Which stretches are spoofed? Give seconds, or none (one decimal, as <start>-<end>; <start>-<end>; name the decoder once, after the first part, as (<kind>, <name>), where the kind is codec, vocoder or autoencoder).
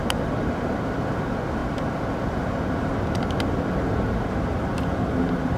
none